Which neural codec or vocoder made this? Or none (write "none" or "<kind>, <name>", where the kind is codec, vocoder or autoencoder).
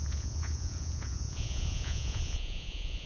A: vocoder, Vocos